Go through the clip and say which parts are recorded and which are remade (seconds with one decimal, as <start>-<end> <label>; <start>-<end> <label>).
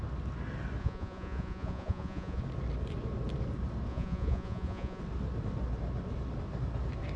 0.0-0.8 recorded; 0.8-2.4 remade; 2.4-3.9 recorded; 3.9-5.0 remade; 5.0-7.2 recorded